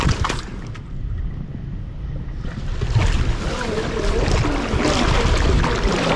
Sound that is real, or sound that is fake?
real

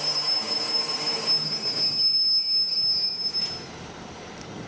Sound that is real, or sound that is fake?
fake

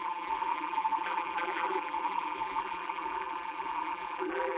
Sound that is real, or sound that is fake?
fake